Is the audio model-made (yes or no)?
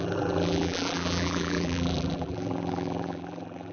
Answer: yes